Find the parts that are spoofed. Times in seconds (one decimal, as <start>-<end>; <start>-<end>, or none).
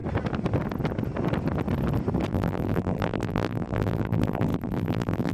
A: 2.3-5.3